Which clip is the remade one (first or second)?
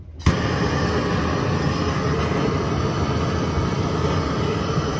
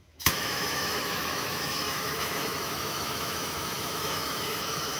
second